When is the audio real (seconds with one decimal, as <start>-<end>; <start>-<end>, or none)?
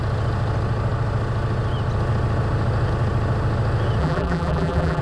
0.0-4.0